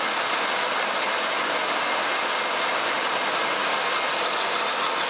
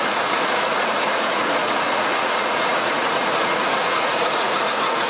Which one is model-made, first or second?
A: second